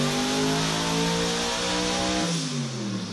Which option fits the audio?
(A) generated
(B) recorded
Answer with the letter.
B